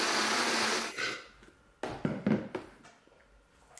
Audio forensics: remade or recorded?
recorded